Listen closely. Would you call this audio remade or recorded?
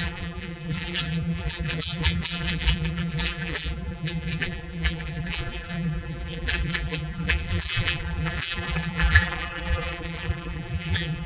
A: remade